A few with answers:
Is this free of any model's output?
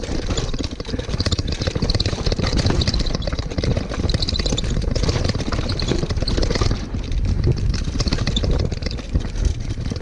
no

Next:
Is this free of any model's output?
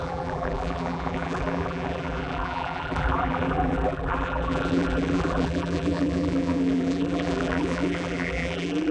no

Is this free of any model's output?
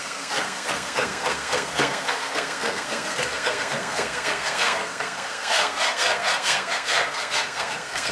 no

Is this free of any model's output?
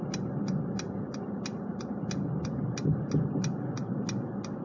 yes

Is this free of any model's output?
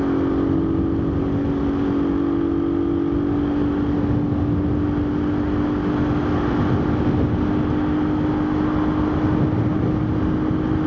yes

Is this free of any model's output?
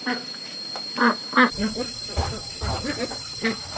no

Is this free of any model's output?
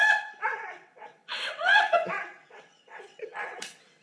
no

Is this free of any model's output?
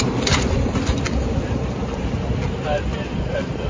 yes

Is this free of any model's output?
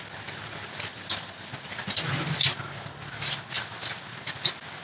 yes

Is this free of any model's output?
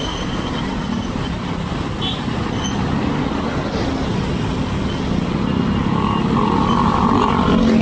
yes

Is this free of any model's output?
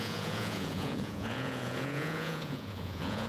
no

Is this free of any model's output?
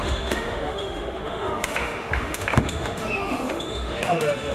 no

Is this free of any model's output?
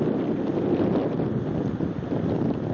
yes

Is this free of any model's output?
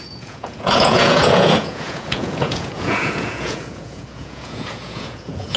no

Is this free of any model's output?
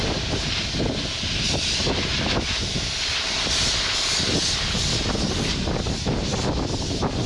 yes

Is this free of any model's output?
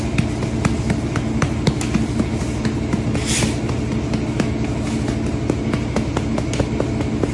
yes